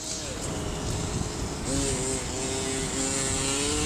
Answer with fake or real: real